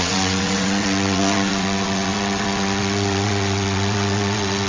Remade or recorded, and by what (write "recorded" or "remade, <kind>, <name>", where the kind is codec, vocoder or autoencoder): remade, vocoder, WaveNeXt